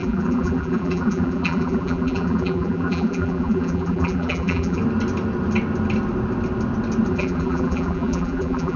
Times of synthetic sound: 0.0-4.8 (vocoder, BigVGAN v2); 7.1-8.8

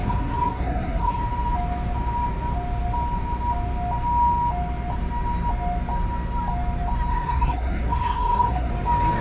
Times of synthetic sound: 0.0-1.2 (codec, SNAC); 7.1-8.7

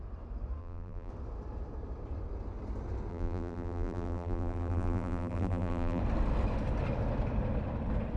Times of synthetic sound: 0.6-1.1 (vocoder, BigVGAN v2); 3.1-6.0

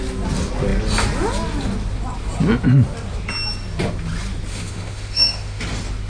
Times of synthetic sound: 4.5-5.6 (autoencoder, DAC-VAE)

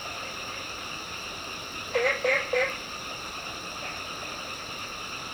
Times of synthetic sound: 0.0-1.4 (vocoder, BigVGAN v2); 2.3-3.8; 4.2-5.3

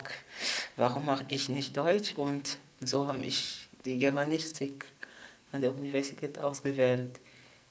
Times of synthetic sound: 1.2-3.2 (codec, SNAC); 3.8-7.7

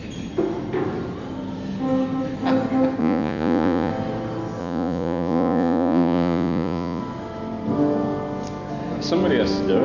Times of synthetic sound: 3.0-3.9 (vocoder, Vocos); 4.6-7.0

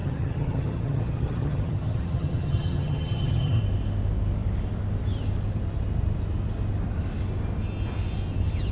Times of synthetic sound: 0.0-3.6 (vocoder, HiFi-GAN)